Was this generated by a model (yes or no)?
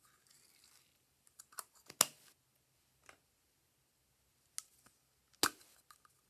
no